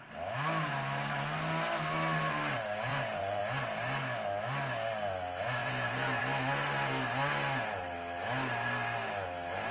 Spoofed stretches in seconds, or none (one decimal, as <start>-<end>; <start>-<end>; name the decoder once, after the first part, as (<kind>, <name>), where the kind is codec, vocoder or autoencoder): 2.9-3.4 (vocoder, Vocos); 5.6-6.2